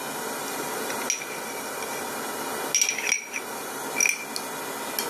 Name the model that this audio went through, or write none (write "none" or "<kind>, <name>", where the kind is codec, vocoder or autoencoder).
none